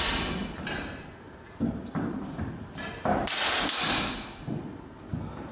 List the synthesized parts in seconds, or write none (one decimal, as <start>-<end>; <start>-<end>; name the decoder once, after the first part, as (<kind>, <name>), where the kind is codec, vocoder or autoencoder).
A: 0.4-3.5 (vocoder, BigVGAN v2)